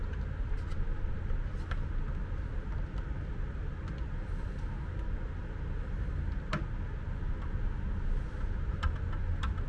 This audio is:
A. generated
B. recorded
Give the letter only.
B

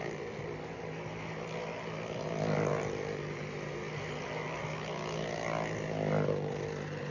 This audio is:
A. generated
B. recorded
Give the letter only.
B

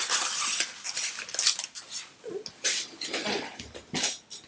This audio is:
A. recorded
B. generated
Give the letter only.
A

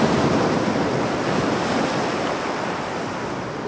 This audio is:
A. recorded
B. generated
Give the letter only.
A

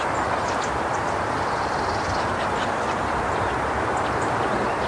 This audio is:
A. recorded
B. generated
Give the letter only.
A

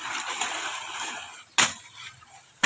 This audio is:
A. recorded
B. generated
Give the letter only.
A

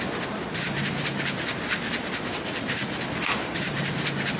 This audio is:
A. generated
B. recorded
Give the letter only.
B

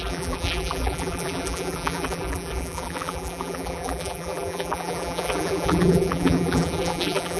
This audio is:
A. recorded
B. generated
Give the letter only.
B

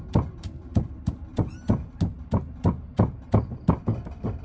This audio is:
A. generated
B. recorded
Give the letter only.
B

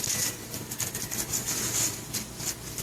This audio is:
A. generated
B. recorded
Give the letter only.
B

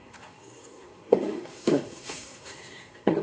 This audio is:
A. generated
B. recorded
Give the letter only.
A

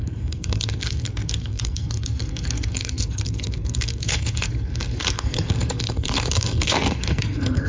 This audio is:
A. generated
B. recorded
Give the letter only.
A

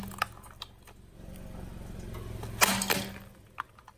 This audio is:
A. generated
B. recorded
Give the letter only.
B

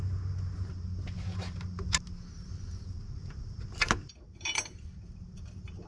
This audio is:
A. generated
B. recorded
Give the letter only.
B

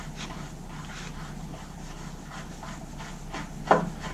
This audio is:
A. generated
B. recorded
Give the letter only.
B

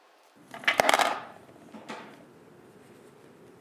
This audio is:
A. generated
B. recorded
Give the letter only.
A